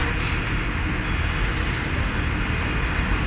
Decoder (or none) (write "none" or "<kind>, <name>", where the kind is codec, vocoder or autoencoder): none